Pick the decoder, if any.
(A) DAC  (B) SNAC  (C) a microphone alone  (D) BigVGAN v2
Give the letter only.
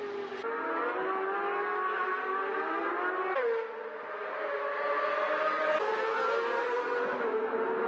C